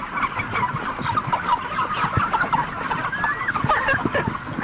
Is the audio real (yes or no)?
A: yes